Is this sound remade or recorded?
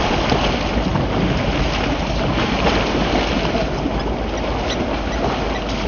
recorded